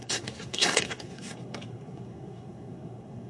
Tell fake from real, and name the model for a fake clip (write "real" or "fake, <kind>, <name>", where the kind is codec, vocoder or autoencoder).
fake, codec, SNAC